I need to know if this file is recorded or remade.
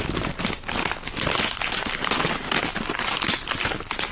recorded